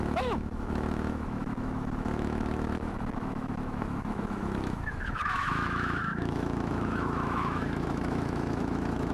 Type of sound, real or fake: fake